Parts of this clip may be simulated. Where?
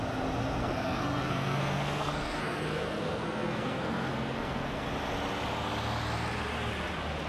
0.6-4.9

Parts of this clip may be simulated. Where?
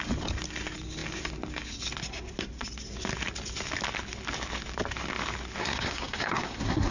5.6-6.9